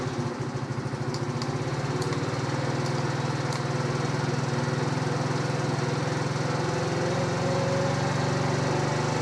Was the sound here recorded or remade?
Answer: recorded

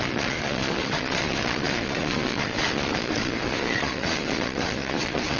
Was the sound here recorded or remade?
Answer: remade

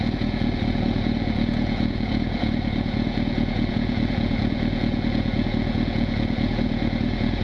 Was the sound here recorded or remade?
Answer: remade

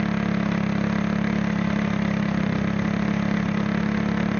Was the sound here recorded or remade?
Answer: recorded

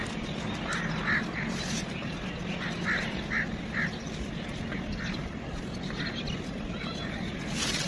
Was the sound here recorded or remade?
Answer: recorded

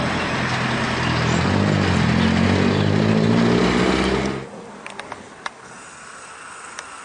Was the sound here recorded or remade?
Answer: recorded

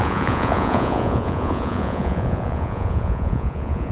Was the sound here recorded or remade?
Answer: remade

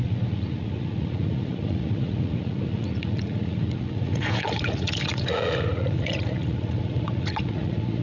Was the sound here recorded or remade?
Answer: remade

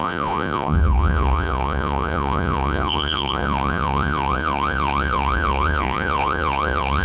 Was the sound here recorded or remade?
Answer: remade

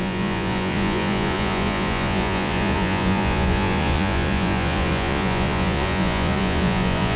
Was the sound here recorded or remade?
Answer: remade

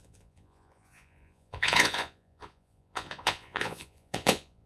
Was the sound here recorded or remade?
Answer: remade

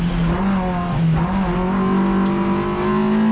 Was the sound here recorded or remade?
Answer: recorded